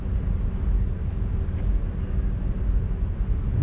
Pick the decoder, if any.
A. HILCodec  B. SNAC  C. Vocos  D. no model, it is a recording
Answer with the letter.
D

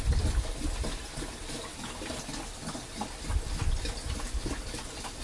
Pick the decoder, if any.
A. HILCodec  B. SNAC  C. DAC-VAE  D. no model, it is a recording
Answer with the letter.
D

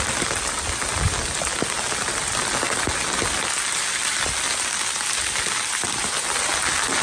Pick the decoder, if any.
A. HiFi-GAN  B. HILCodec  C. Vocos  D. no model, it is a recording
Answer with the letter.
D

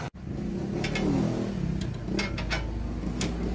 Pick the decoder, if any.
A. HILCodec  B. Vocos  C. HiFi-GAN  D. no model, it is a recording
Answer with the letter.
D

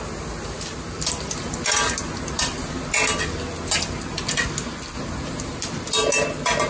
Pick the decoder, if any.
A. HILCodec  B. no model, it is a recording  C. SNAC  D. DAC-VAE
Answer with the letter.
B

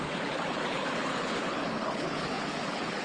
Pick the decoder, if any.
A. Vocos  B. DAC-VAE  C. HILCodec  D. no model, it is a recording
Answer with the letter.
C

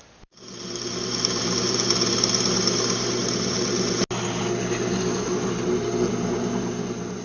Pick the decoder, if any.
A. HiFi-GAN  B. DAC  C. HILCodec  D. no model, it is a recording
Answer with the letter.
D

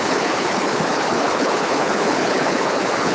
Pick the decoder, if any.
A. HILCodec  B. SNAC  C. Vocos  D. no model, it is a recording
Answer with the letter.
A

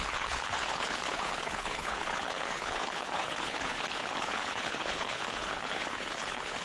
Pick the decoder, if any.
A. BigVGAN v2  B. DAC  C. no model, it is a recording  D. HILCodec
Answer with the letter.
D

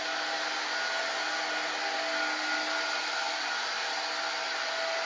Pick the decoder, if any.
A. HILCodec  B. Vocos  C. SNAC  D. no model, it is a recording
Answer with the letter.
D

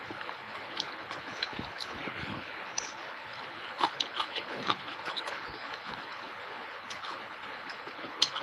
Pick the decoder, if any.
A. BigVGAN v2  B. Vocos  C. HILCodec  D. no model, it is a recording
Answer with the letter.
C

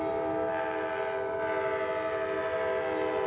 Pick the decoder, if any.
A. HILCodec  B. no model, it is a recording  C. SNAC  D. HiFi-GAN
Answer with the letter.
B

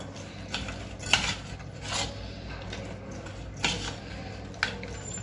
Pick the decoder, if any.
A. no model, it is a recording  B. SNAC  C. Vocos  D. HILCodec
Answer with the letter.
A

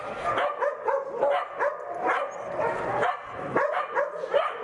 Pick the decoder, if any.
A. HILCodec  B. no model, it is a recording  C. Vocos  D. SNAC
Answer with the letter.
B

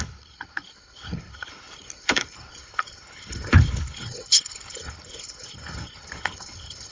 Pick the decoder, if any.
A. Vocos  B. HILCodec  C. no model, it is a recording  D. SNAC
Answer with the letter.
B